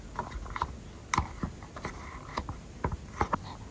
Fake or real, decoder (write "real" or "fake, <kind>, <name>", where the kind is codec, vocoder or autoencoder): real